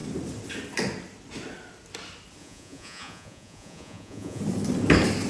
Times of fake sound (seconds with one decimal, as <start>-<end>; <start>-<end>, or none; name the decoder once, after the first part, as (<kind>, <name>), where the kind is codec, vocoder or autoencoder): 2.4-4.4 (vocoder, Vocos)